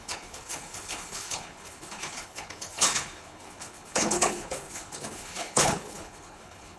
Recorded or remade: remade